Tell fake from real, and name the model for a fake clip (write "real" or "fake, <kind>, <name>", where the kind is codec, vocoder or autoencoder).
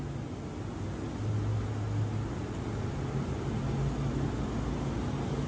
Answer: real